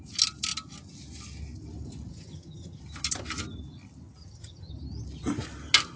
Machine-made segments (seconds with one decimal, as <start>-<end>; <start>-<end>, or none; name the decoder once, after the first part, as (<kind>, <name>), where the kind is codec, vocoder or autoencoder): 2.1-2.8 (vocoder, HiFi-GAN); 4.2-4.7